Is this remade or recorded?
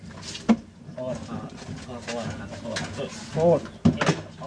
recorded